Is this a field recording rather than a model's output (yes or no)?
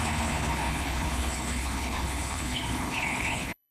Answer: no